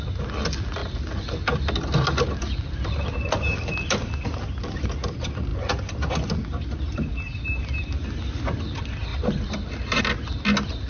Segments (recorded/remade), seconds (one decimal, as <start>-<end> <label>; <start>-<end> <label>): 0.0-10.9 recorded